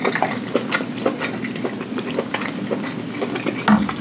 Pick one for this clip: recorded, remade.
recorded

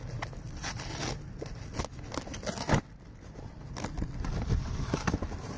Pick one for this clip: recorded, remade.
recorded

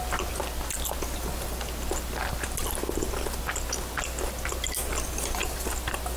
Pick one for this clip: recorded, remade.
recorded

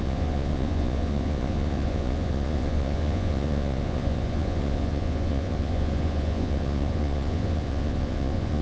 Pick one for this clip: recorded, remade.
remade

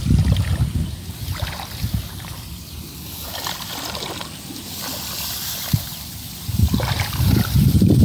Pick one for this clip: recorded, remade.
recorded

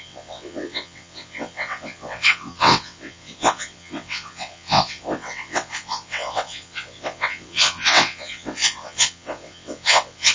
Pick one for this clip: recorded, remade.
remade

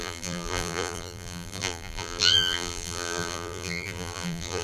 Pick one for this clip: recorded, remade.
remade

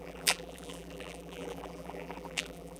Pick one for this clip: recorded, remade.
remade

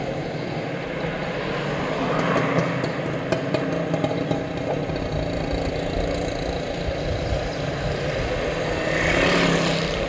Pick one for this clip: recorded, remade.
recorded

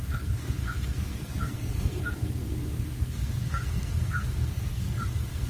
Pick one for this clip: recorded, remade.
remade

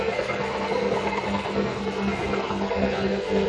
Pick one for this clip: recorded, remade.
remade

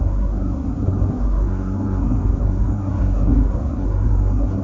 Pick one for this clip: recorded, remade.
remade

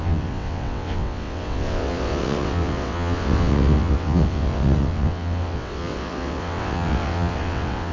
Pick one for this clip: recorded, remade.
remade